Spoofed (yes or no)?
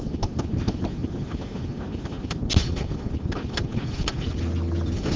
no